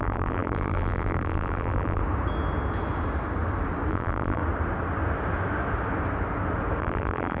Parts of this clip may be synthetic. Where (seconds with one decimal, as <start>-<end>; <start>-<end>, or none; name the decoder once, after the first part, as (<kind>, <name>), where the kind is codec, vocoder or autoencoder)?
0.0-2.0 (vocoder, BigVGAN v2); 3.9-4.4; 6.8-7.4